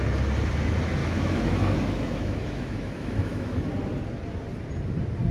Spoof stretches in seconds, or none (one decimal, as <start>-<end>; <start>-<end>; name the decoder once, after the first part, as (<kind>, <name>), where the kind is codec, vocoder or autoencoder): 1.0-3.7 (autoencoder, DAC-VAE)